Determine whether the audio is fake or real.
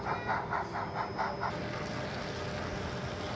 real